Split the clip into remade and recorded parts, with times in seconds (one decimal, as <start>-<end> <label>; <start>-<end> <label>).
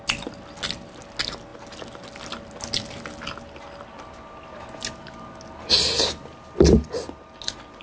0.0-7.8 recorded